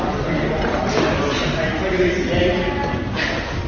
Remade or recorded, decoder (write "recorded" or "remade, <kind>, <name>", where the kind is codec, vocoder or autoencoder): recorded